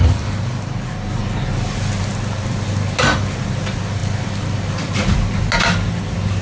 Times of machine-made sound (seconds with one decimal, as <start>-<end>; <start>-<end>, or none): none